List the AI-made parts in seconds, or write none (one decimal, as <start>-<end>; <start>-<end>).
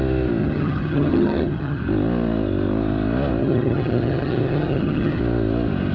0.4-1.8; 3.4-5.2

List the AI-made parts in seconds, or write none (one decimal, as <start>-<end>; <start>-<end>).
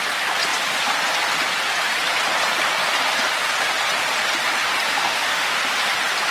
4.9-5.6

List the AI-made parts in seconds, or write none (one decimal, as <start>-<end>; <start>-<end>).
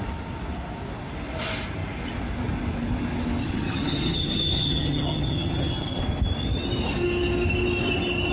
3.4-6.0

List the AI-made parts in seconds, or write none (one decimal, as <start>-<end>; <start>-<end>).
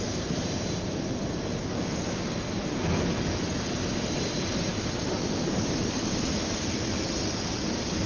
none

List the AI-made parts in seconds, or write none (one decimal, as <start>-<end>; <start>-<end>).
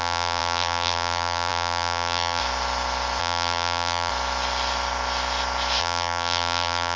0.0-2.4; 3.2-4.1; 5.8-7.0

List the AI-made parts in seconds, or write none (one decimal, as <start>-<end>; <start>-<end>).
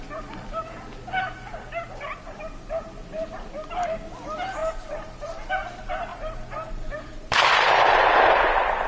4.6-5.5; 6.1-8.9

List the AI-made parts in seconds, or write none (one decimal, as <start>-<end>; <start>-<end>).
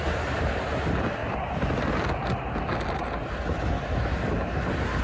none